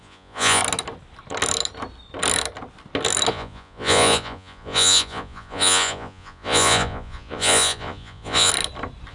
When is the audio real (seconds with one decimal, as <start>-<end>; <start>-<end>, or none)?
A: 0.6-3.3; 8.5-9.1